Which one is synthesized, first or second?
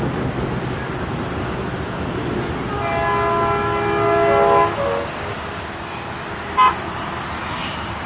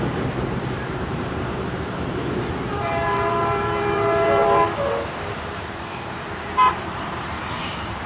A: second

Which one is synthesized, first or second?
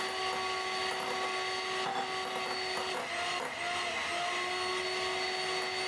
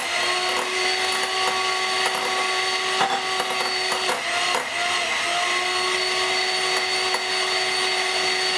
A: second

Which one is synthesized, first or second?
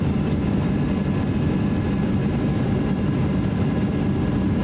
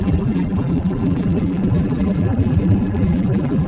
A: second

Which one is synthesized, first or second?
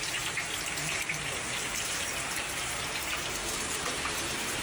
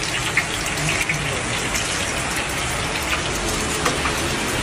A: first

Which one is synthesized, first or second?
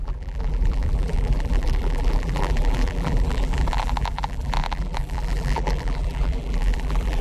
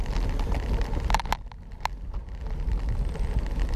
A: first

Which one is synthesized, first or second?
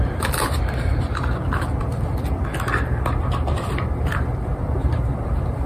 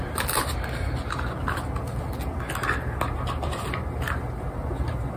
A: first